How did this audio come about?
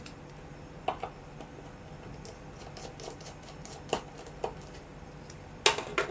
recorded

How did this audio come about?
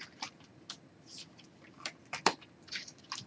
recorded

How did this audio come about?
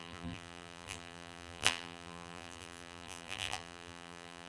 remade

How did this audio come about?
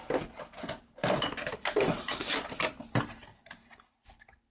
recorded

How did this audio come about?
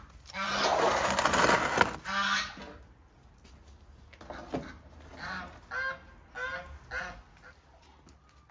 recorded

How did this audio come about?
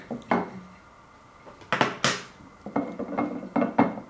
recorded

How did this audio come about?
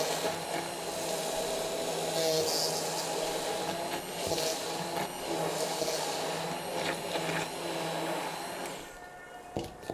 recorded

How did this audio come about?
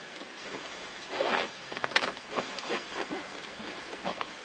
remade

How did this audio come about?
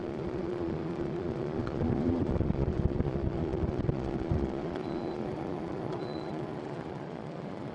remade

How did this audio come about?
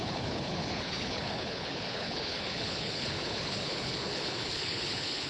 remade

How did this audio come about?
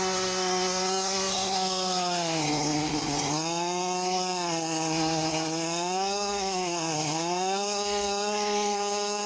remade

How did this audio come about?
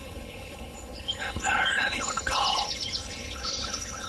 remade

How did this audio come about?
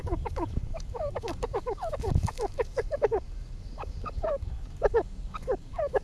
remade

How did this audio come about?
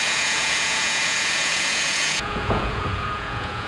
remade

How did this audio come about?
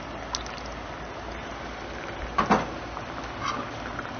recorded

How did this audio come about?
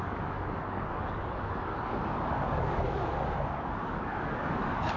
remade